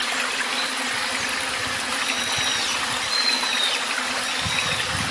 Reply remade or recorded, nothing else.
recorded